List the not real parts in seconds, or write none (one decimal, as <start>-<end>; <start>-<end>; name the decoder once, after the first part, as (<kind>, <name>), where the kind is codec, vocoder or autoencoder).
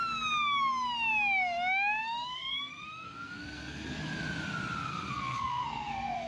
2.0-4.0 (codec, SNAC); 4.9-6.3